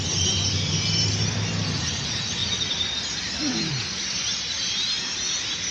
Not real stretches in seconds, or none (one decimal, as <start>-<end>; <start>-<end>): none